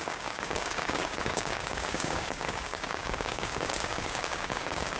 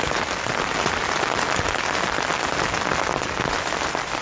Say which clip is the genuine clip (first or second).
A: second